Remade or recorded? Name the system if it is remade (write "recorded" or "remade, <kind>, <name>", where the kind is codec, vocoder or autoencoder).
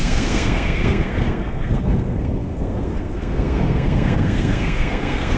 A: remade, codec, SNAC